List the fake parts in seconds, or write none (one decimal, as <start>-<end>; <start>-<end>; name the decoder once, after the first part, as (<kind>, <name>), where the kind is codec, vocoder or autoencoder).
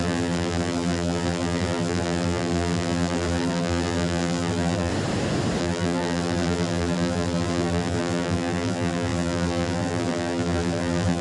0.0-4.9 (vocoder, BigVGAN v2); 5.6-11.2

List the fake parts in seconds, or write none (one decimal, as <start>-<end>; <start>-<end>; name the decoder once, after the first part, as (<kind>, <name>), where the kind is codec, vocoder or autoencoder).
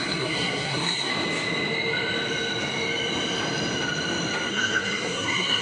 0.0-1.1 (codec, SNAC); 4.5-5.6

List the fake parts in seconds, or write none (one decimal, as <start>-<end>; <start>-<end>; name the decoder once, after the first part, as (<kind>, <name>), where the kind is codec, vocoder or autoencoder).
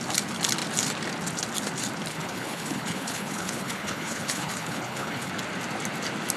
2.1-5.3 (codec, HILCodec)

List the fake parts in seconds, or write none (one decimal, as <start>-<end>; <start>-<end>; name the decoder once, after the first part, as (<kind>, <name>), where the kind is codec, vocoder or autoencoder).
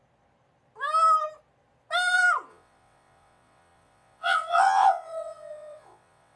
2.5-6.4 (vocoder, WaveNeXt)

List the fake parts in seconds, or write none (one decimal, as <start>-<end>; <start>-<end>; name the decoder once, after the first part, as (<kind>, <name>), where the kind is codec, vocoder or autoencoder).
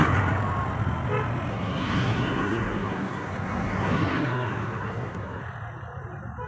1.5-5.4 (codec, SNAC)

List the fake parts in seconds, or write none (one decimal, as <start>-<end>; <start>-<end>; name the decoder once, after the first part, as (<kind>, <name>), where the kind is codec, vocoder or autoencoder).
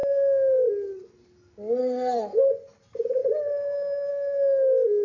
1.8-2.5 (codec, SNAC)